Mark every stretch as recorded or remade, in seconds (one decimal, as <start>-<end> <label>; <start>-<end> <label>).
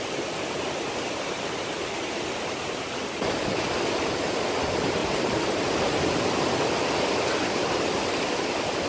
0.0-5.0 recorded; 5.0-6.1 remade; 6.1-8.9 recorded